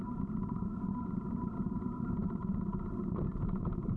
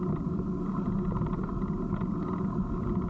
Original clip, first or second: second